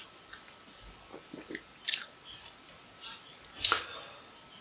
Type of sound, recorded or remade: recorded